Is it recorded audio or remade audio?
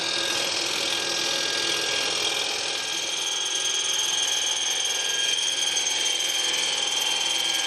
recorded